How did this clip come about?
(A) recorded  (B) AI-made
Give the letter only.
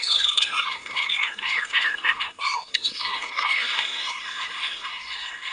B